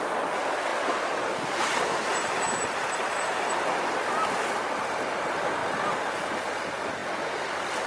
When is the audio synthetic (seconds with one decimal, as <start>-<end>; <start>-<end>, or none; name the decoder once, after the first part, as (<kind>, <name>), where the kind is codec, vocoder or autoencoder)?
none